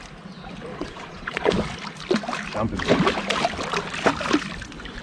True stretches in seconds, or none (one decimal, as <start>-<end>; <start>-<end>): 0.0-0.7; 1.5-5.0